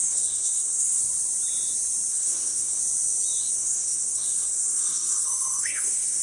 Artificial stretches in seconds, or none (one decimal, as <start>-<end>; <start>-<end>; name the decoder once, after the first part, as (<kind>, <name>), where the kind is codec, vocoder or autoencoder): 0.0-1.0 (codec, SNAC); 2.1-2.8; 3.4-6.2